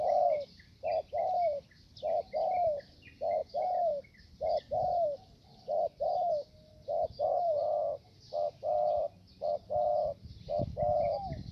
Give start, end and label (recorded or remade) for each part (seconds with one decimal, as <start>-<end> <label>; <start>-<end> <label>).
0.0-11.5 recorded